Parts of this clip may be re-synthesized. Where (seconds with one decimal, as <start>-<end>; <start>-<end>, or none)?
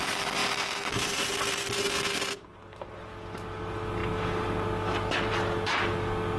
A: none